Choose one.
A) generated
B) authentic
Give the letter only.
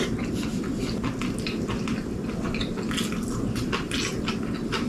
B